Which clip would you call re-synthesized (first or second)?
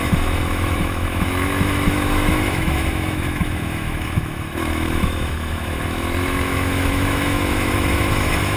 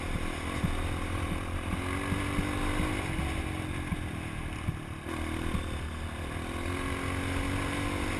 first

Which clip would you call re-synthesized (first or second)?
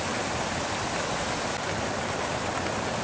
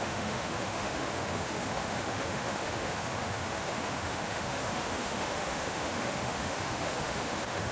second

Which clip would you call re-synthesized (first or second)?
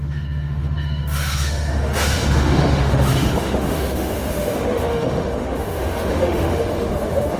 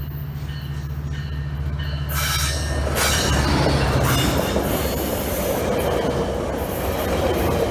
first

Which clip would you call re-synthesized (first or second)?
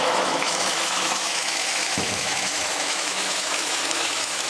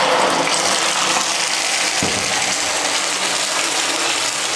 first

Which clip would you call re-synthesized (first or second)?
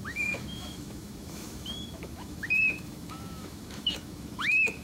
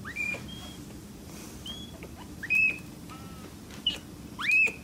first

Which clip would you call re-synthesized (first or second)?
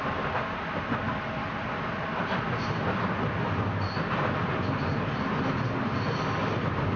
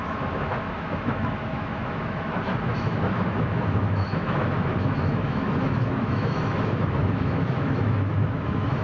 second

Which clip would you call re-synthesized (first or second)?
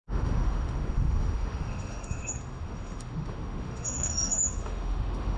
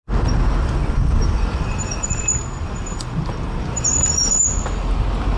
first